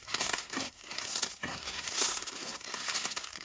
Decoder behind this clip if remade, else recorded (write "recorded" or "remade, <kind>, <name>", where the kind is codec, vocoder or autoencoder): remade, codec, SNAC